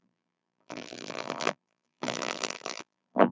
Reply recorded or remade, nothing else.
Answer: remade